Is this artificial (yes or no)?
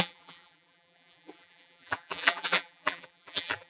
yes